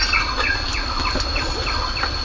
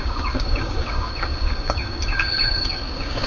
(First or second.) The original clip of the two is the first